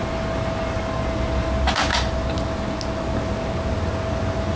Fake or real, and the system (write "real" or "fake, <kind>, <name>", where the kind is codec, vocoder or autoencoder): real